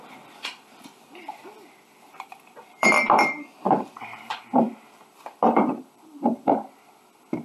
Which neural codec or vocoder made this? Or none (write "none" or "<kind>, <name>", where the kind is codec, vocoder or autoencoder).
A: vocoder, BigVGAN v2